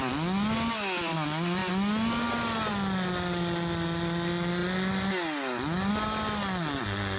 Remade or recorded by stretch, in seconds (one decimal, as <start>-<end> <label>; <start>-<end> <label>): 0.0-7.2 recorded

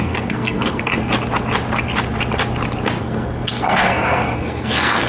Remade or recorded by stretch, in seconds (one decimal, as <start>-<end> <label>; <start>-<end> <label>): 0.0-0.9 remade; 0.9-3.0 recorded; 3.0-5.1 remade

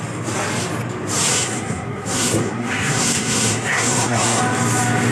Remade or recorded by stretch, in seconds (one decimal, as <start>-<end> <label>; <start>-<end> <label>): 0.0-1.3 recorded; 1.3-4.4 remade; 4.4-5.1 recorded

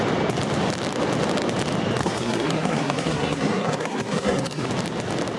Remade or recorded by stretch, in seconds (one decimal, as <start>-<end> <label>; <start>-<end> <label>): 0.0-2.0 recorded; 2.0-4.7 remade; 4.7-5.4 recorded

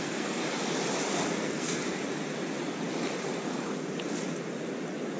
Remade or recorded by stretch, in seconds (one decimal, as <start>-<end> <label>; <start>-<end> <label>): 0.0-0.4 remade; 0.4-1.4 recorded; 1.4-1.8 remade; 1.8-5.2 recorded

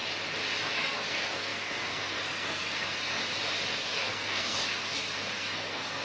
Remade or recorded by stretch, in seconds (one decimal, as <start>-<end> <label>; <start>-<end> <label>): 0.0-0.7 recorded; 0.7-3.2 remade; 3.2-3.7 recorded; 3.7-6.0 remade